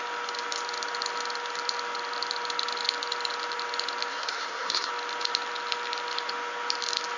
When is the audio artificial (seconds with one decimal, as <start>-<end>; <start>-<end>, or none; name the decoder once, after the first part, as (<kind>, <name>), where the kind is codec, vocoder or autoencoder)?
4.1-4.9 (codec, SNAC)